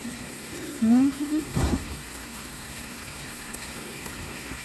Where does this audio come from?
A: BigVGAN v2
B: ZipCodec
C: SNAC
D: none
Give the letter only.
C